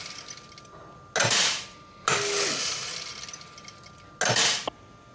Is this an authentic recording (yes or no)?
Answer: yes